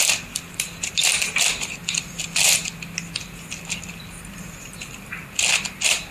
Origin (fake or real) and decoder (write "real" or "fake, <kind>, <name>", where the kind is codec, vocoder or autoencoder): real